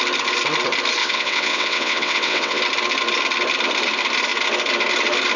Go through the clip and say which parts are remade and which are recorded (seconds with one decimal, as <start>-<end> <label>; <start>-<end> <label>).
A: 0.0-1.0 recorded; 1.0-2.6 remade; 2.6-5.4 recorded